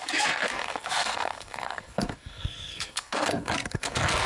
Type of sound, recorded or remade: remade